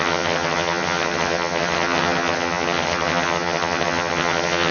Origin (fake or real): fake